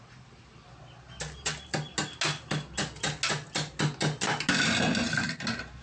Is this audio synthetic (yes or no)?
no